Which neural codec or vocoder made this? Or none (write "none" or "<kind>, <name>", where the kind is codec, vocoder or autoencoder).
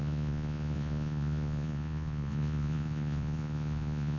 vocoder, Vocos